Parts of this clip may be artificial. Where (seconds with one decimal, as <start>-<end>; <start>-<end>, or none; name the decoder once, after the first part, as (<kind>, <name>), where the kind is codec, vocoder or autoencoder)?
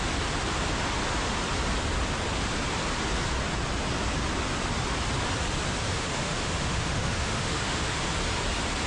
5.9-8.1 (autoencoder, DAC-VAE)